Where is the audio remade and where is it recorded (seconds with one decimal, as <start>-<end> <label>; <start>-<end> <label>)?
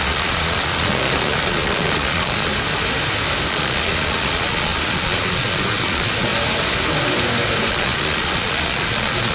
0.0-2.5 remade; 2.5-3.5 recorded; 3.5-6.3 remade; 6.3-7.7 recorded; 7.7-9.3 remade